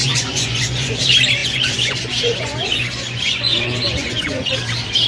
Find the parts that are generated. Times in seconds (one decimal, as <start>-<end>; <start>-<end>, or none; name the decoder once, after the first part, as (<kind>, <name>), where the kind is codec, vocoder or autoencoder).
0.0-1.0 (vocoder, Vocos); 1.4-4.5